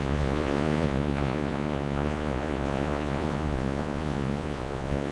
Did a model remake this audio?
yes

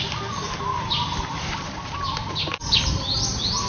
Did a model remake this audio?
no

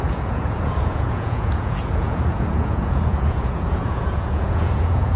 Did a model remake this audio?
yes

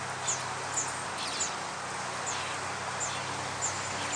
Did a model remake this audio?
no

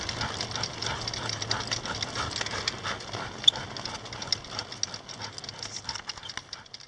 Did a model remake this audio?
no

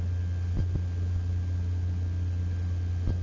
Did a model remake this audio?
no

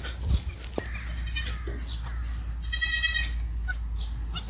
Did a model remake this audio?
no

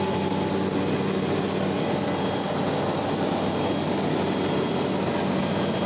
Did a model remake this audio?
no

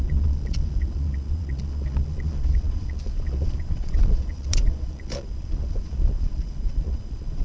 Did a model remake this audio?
yes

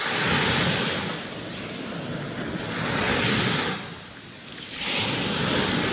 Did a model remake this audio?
no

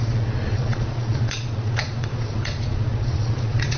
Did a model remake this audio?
yes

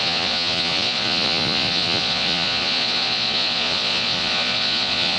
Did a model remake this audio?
yes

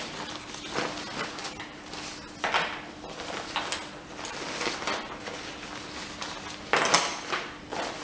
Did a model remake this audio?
no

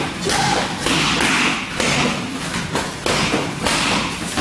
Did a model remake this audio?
no